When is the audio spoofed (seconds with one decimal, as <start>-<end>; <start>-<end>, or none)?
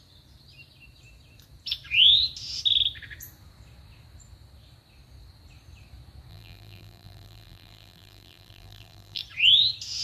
6.3-9.2